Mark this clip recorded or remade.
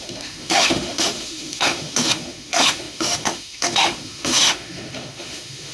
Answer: remade